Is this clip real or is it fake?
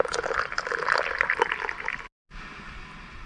real